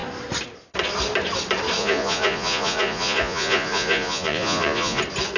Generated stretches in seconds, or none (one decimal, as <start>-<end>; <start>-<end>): 1.8-5.0